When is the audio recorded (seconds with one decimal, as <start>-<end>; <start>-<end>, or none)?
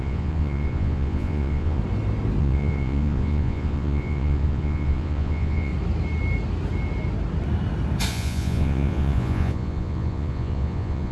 1.8-2.4; 5.7-8.1